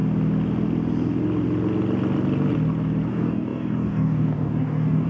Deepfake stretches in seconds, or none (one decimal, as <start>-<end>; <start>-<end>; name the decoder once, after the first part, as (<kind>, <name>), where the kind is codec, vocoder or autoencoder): 3.1-5.1 (codec, DAC)